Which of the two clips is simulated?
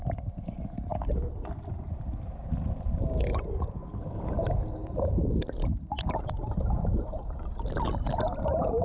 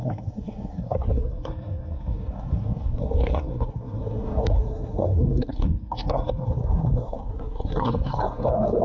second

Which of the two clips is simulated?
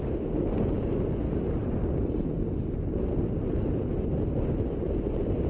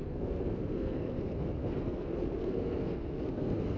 second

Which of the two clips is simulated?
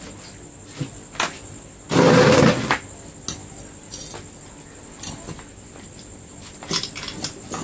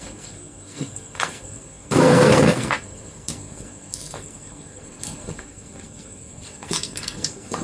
second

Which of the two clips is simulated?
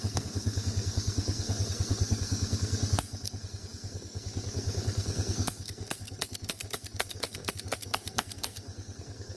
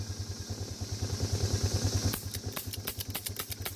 first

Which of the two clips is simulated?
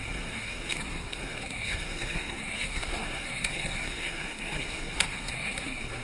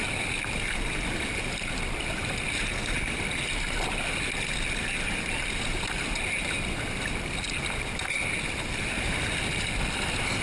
first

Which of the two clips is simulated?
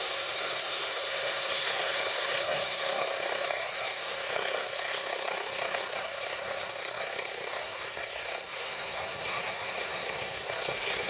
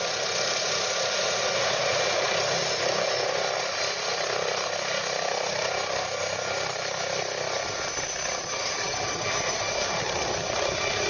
first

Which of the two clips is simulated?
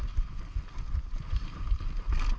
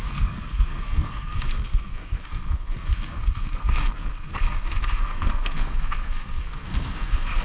second